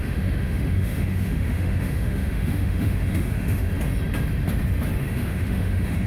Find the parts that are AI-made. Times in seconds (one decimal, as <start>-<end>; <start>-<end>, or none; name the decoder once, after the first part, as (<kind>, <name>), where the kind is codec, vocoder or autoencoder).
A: 0.0-3.7 (autoencoder, DAC-VAE); 5.0-6.1